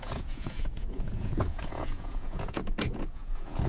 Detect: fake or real fake